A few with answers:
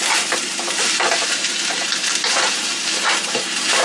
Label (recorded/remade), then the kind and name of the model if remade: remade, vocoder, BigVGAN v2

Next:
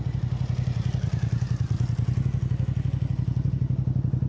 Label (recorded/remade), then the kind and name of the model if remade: recorded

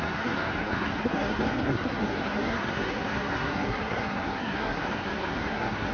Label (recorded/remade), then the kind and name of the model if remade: remade, codec, SNAC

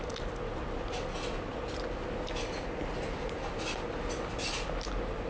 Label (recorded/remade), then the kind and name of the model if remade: recorded